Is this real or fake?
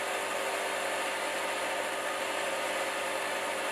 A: real